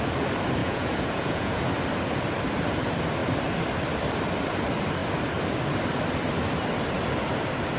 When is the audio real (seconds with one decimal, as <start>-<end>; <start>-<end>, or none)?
0.0-0.6; 1.7-7.8